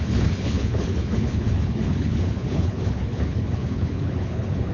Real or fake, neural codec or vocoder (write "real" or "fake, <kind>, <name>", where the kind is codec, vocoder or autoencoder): fake, codec, HILCodec